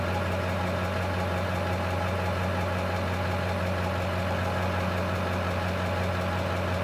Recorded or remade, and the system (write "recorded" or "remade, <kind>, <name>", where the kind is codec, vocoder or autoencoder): recorded